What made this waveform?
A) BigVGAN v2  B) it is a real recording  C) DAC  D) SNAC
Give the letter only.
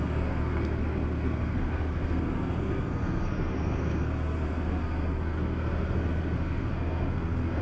D